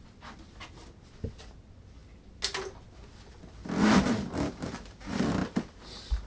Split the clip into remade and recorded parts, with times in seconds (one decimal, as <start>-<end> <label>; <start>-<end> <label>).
0.0-6.3 recorded